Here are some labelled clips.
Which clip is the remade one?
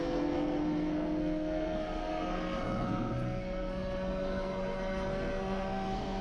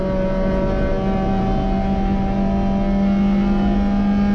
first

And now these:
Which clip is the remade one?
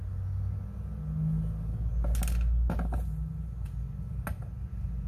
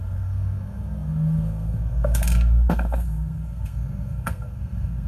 second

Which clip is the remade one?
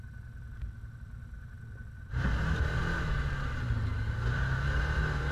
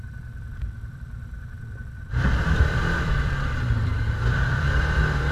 second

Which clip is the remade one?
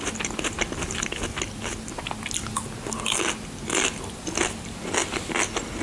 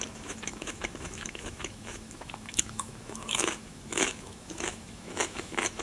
second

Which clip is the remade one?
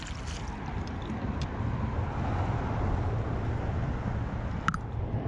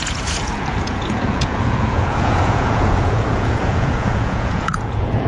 second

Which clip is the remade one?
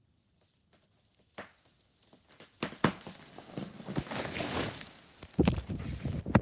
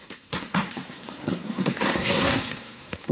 second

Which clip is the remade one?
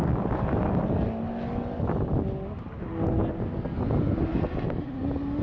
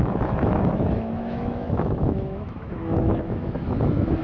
second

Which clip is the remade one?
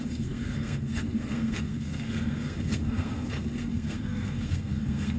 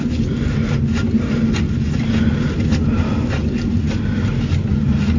first